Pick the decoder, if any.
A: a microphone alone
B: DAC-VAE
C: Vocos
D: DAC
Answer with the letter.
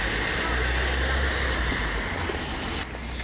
A